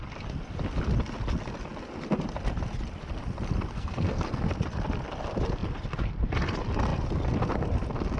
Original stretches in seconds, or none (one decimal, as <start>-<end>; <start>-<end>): 0.0-3.7; 4.5-8.2